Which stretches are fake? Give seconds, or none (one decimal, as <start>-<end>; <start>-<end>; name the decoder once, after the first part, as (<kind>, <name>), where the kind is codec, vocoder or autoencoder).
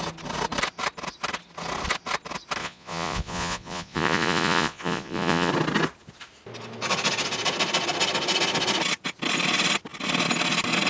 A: 2.6-5.5 (vocoder, Vocos)